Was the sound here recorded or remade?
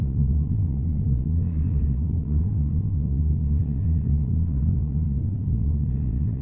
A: remade